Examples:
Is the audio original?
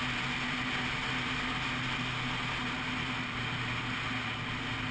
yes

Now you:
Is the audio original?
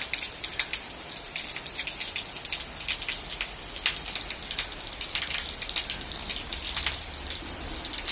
yes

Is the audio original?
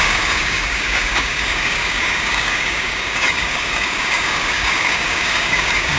no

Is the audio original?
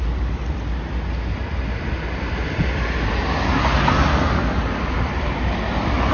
yes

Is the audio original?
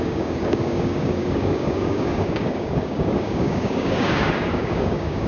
no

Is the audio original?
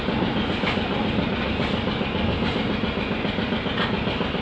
yes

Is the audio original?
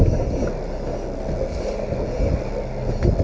yes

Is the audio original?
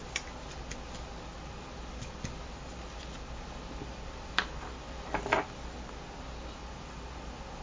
yes